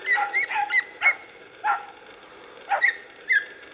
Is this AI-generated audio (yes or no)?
no